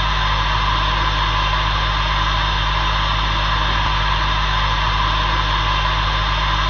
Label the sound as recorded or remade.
recorded